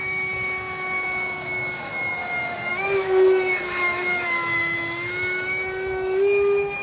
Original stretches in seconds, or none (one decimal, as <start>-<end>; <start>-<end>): 2.2-2.7